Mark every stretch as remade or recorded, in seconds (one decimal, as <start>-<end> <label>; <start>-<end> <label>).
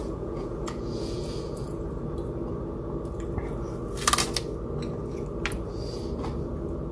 0.0-1.9 remade; 1.9-6.9 recorded